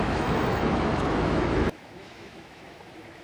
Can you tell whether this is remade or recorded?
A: remade